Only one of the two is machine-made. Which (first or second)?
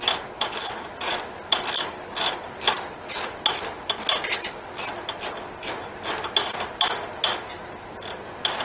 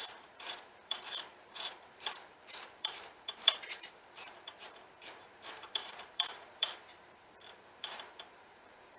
second